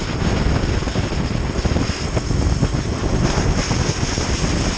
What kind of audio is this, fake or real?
real